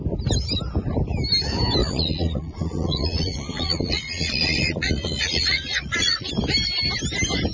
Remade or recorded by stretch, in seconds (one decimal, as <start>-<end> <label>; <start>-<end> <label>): 0.0-1.8 recorded; 1.8-6.3 remade; 6.3-7.5 recorded